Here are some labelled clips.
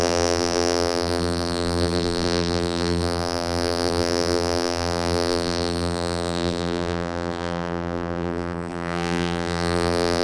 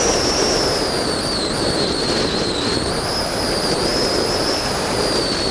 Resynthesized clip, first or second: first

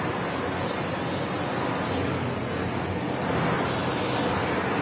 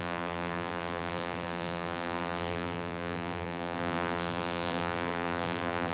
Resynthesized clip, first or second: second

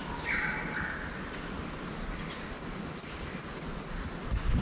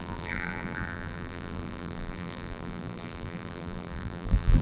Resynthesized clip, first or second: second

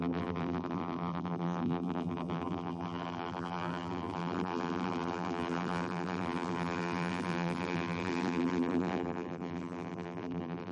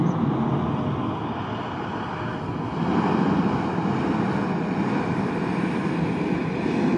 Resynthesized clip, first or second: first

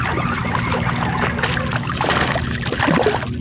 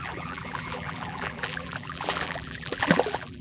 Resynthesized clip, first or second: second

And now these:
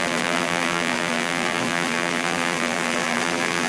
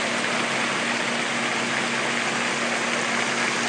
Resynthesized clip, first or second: first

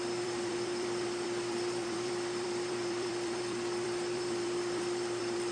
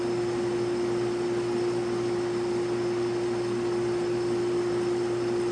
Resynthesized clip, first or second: first